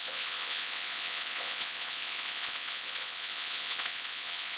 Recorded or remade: remade